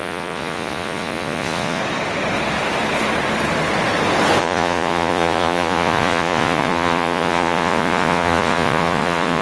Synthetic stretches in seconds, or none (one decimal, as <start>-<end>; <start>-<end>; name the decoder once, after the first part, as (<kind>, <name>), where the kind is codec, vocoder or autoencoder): 0.0-1.8 (vocoder, Vocos); 4.4-9.4